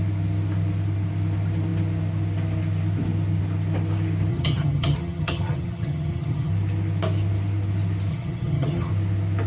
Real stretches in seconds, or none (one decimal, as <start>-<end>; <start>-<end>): 0.0-4.3; 6.5-8.1; 8.9-9.5